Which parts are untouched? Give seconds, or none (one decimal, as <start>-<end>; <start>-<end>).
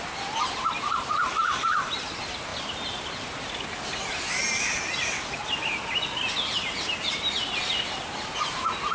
0.0-8.9